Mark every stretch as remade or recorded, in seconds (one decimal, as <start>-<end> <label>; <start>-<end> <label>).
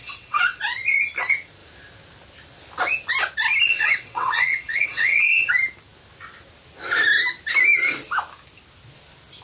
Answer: 0.0-0.6 remade; 0.6-3.7 recorded; 3.7-5.5 remade; 5.5-9.4 recorded